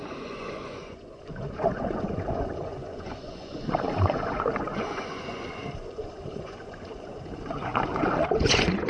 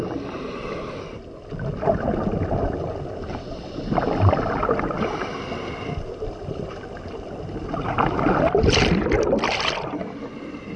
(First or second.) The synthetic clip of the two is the first